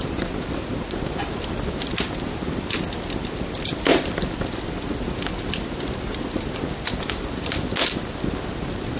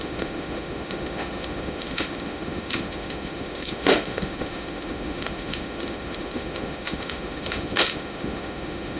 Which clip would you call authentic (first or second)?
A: first